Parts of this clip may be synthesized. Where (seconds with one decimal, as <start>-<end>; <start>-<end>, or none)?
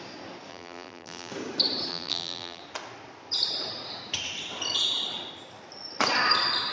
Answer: 0.5-1.3; 1.9-2.6